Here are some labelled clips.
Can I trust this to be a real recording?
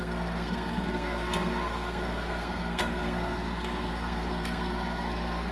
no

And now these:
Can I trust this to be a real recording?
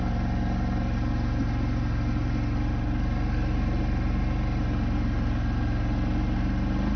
yes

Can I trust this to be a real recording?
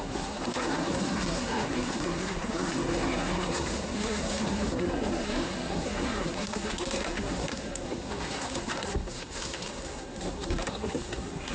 no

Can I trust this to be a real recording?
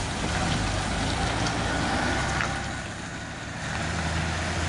yes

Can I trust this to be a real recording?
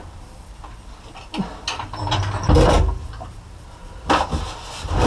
yes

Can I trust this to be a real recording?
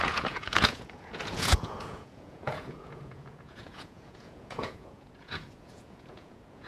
no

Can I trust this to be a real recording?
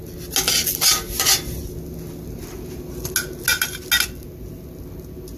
yes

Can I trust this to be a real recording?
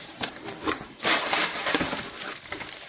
no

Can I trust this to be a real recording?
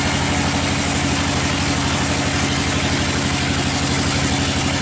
yes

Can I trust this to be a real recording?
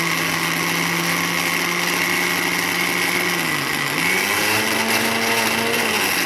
yes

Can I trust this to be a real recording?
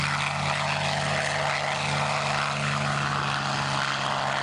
yes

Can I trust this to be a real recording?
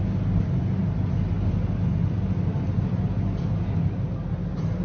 yes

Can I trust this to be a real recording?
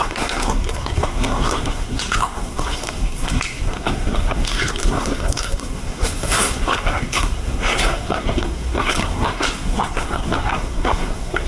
no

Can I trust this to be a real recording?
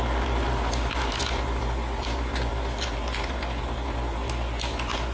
yes